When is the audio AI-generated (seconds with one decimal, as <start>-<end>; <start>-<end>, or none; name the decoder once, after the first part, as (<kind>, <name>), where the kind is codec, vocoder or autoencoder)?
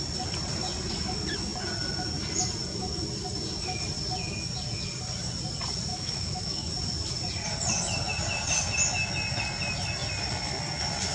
5.9-6.7 (autoencoder, DAC-VAE)